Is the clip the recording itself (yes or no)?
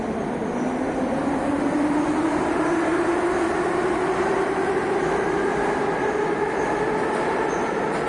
yes